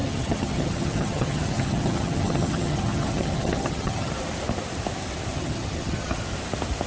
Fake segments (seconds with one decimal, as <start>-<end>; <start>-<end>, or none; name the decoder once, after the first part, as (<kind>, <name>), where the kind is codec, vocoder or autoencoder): 0.0-4.1 (vocoder, HiFi-GAN); 5.3-6.2